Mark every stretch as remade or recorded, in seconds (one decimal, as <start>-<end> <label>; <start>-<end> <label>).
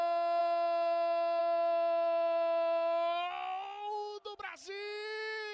0.0-5.5 recorded